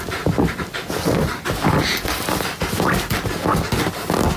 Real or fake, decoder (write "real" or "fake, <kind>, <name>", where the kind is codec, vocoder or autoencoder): real